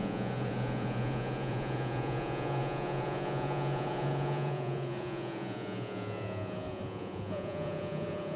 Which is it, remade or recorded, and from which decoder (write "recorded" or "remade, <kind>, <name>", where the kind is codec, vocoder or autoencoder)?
remade, vocoder, Vocos